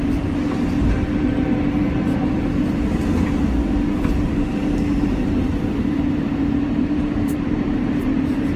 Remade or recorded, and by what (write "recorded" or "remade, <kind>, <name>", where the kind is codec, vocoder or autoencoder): remade, vocoder, BigVGAN v2